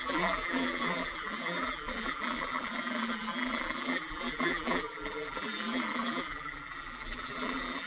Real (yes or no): no